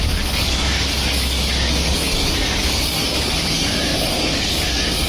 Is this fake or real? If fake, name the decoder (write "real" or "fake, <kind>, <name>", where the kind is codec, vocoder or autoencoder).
fake, codec, DAC